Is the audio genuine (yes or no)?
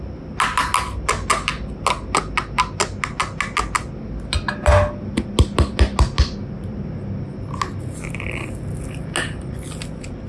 yes